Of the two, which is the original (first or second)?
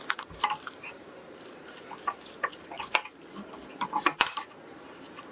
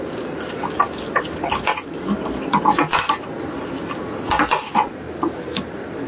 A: second